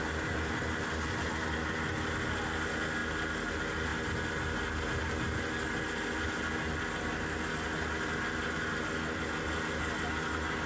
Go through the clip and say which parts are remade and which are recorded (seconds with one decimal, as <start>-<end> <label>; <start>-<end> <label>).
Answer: 0.0-10.7 recorded

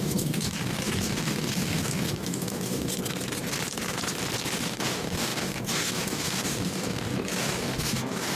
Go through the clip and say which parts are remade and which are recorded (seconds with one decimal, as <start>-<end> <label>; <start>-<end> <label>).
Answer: 0.0-2.9 remade; 2.9-4.6 recorded; 4.6-8.4 remade